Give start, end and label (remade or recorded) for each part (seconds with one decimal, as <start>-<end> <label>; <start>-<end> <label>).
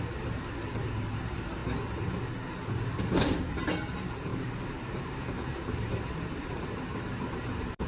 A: 0.0-1.6 remade; 1.6-3.0 recorded; 3.0-7.9 remade